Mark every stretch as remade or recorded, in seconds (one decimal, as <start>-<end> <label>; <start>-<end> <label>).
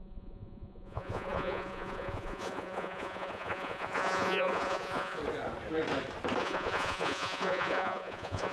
0.0-5.2 remade; 5.2-6.4 recorded; 6.4-8.5 remade